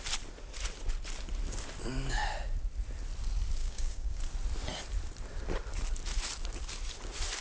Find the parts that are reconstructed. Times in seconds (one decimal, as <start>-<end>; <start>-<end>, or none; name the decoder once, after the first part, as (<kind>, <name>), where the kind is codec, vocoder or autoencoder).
3.6-4.2 (codec, DAC)